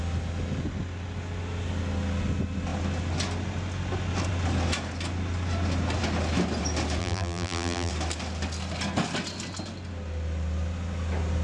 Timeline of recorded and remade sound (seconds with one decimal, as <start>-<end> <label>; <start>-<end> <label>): 0.0-7.0 recorded; 7.0-7.9 remade; 7.9-11.4 recorded